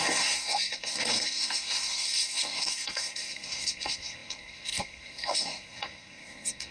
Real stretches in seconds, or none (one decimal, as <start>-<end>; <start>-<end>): none